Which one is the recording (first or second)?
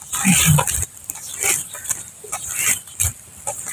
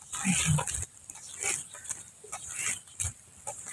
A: second